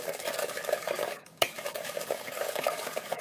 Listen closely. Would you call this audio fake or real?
fake